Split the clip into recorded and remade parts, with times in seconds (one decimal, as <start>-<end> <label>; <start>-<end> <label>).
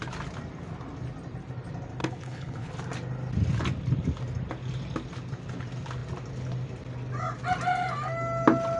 0.0-2.0 recorded; 2.0-2.7 remade; 2.7-8.8 recorded